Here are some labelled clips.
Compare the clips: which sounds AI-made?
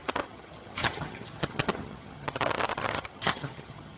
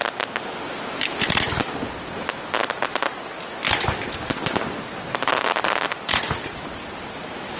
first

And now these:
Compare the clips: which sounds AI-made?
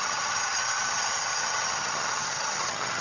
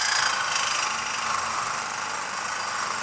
first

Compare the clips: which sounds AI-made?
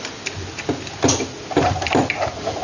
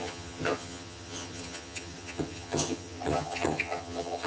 second